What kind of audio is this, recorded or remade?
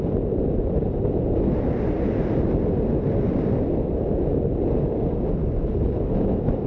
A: recorded